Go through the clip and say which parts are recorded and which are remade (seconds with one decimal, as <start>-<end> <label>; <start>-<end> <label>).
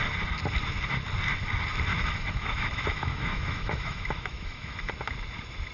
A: 0.0-1.9 recorded; 1.9-4.9 remade; 4.9-5.7 recorded